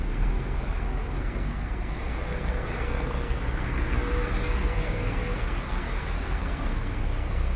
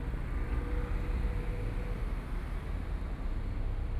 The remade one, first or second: first